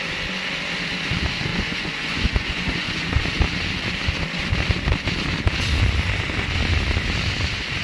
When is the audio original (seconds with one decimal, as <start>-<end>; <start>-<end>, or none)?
0.0-1.5; 3.2-7.8